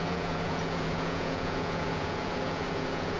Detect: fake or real fake